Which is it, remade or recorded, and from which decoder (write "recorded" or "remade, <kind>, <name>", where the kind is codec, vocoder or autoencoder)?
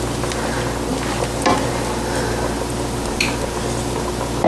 recorded